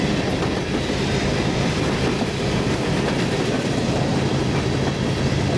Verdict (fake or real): fake